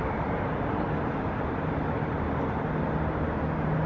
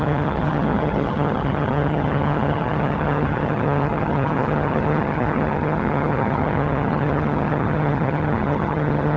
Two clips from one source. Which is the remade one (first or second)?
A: second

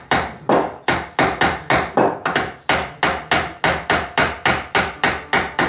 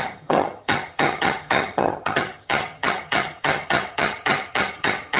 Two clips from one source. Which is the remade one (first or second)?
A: second